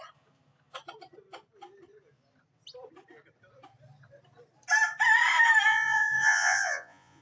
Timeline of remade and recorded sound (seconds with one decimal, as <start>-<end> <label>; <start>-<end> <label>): 0.0-5.7 recorded; 5.7-7.2 remade